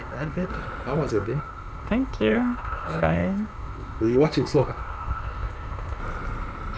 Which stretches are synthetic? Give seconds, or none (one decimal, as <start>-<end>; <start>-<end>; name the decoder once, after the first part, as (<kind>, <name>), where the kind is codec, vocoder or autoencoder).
0.0-0.5 (codec, ZipCodec); 1.1-6.0